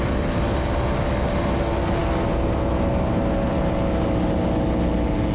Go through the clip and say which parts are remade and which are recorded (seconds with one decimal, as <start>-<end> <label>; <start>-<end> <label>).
0.0-5.3 recorded

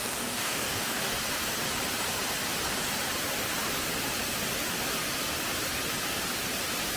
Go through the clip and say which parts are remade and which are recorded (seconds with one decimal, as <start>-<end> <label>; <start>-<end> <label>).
0.0-1.1 remade; 1.1-7.0 recorded

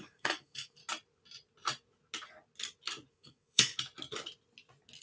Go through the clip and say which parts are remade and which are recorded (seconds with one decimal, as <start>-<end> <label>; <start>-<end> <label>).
0.0-0.8 remade; 0.8-3.1 recorded; 3.1-3.7 remade; 3.7-5.0 recorded

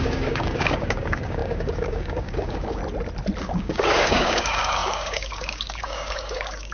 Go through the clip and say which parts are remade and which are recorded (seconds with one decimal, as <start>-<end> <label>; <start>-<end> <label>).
0.0-2.8 remade; 2.8-3.4 recorded; 3.4-6.7 remade

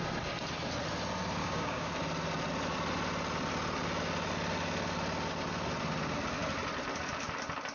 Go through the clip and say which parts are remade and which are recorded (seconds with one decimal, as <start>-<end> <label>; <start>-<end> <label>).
0.0-1.4 recorded; 1.4-1.9 remade; 1.9-7.7 recorded

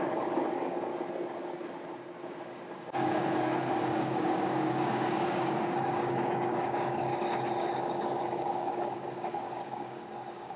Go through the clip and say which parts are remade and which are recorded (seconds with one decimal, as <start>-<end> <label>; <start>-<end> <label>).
0.0-0.9 remade; 0.9-2.3 recorded; 2.3-7.1 remade; 7.1-7.8 recorded; 7.8-10.6 remade

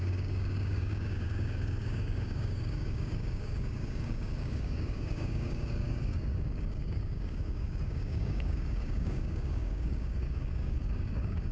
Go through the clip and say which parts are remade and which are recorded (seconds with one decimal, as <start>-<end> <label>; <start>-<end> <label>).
0.0-11.5 remade